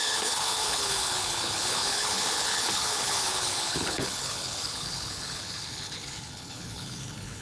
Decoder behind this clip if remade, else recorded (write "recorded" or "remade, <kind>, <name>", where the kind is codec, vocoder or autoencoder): remade, codec, HILCodec